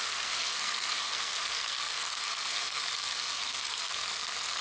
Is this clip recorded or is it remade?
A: remade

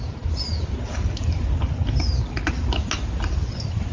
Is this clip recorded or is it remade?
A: recorded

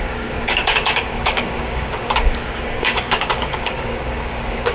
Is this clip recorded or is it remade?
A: remade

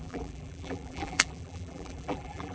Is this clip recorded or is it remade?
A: remade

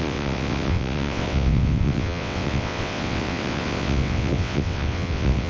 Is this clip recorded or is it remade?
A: remade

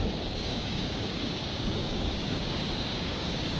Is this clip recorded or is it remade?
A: remade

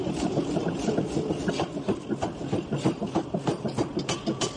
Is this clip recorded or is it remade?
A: recorded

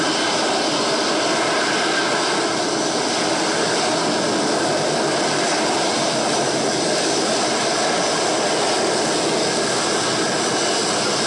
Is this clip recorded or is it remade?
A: recorded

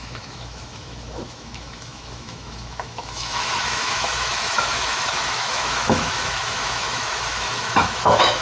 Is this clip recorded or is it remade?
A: remade